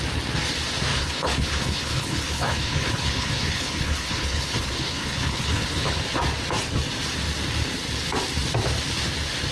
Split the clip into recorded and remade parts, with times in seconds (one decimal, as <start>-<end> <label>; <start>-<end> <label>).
0.0-0.9 recorded; 0.9-6.0 remade; 6.0-9.5 recorded